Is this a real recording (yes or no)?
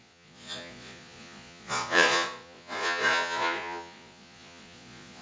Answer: no